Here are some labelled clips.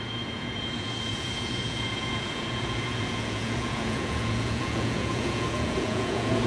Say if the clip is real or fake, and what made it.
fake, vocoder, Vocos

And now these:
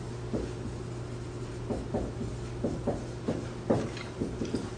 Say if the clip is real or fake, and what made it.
real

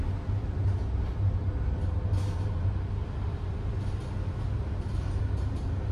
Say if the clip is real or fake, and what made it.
real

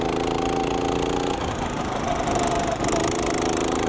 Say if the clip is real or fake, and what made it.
real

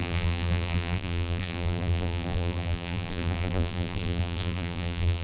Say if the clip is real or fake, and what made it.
fake, vocoder, BigVGAN v2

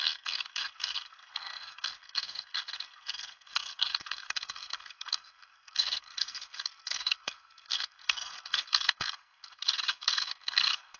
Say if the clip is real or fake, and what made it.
fake, codec, SNAC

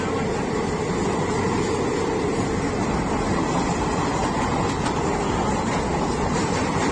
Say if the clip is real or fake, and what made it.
real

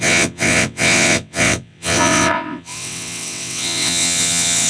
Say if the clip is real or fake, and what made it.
fake, vocoder, WaveNeXt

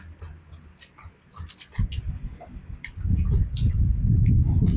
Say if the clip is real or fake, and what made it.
real